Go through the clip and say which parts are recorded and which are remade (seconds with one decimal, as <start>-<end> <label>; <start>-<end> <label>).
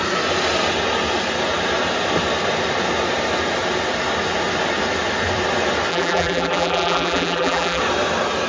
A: 0.0-5.9 recorded; 5.9-7.8 remade; 7.8-8.5 recorded